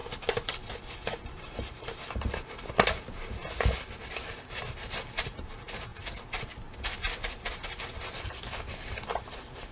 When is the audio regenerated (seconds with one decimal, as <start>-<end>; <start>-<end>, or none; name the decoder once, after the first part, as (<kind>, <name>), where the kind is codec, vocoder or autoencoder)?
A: 1.0-3.4 (vocoder, BigVGAN v2); 4.1-5.9; 8.2-9.7